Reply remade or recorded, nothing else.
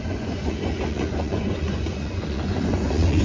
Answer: remade